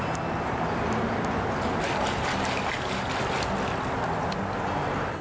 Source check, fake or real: real